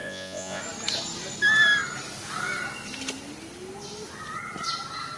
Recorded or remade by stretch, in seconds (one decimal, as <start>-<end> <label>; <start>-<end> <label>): 0.0-0.6 remade; 0.6-5.2 recorded